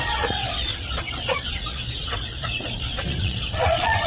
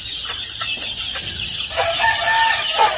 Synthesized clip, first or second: first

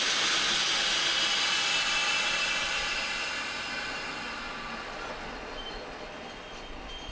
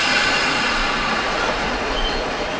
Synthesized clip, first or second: second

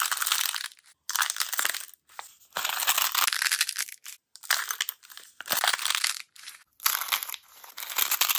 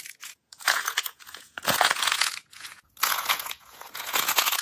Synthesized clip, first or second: second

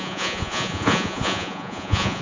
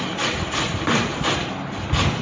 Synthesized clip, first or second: first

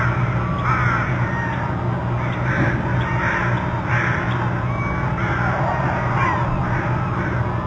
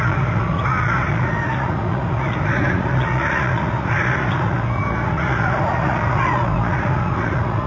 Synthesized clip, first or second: second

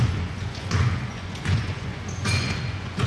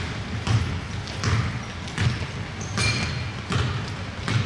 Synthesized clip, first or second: first